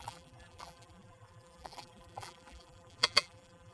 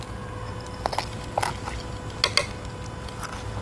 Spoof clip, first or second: first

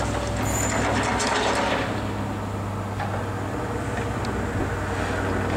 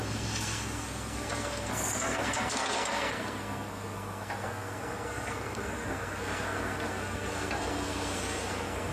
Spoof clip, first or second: second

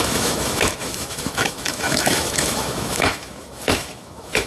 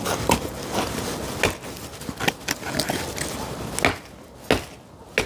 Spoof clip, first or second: first